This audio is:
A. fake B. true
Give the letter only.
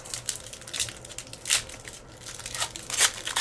B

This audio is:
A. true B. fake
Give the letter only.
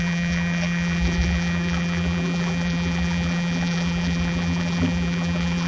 B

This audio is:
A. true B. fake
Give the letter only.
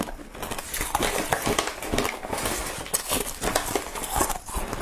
A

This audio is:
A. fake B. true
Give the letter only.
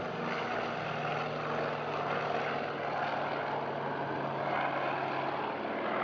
B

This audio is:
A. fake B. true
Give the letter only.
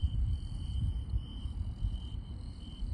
A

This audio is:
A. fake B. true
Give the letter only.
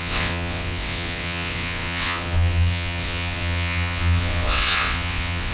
A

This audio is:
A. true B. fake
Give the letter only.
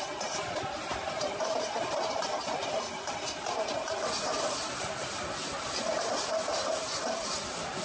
A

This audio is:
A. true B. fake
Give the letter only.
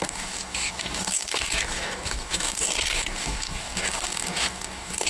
B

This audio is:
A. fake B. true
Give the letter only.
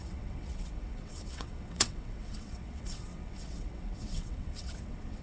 A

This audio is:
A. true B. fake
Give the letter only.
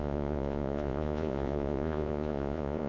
B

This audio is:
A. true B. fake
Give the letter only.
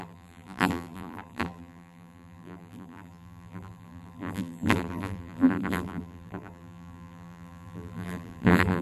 B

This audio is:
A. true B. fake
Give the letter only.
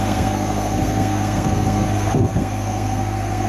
B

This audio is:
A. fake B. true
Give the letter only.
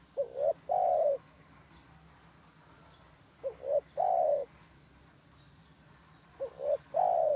B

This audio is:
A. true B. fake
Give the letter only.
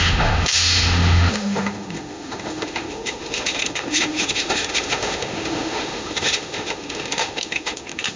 B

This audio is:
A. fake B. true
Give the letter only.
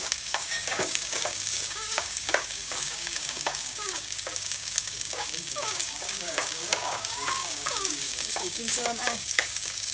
A